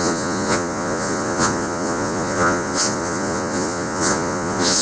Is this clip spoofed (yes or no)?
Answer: yes